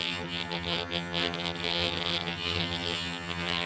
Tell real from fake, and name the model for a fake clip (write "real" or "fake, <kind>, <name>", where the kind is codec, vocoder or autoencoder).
fake, vocoder, HiFi-GAN